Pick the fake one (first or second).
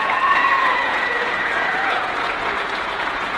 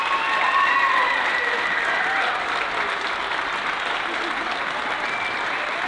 first